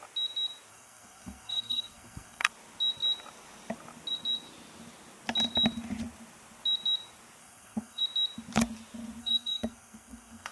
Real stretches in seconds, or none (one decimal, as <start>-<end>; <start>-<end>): 0.0-0.7; 2.5-7.4; 8.0-9.2